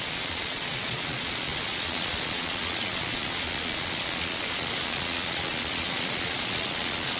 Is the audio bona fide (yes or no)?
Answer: no